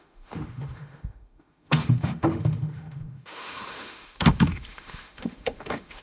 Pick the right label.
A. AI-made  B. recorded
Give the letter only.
A